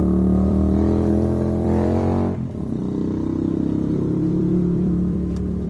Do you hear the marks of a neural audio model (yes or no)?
yes